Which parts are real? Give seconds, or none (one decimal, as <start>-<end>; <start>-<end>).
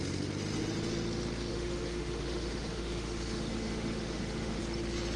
0.0-1.5; 4.6-5.2